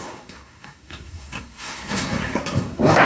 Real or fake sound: fake